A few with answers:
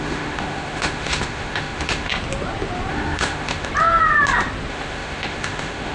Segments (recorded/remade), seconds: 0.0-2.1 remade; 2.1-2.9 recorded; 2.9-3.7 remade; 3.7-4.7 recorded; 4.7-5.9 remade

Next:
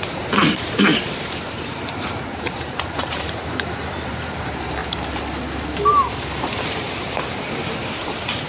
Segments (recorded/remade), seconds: 0.0-4.8 remade; 4.8-6.6 recorded; 6.6-8.5 remade

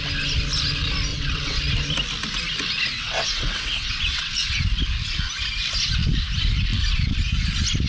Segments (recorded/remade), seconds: 0.0-1.1 recorded; 1.1-1.6 remade; 1.6-2.9 recorded; 2.9-4.6 remade; 4.6-7.9 recorded